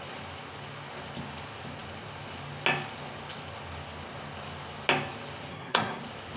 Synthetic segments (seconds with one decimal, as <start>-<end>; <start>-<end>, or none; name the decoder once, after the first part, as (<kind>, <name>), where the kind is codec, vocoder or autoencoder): 5.5-6.0 (codec, SNAC)